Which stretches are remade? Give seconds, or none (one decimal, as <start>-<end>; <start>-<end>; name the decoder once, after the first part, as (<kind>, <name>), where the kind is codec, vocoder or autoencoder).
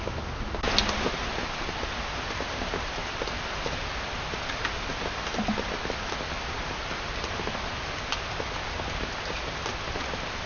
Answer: none